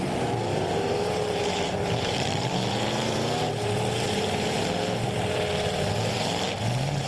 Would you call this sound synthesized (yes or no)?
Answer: yes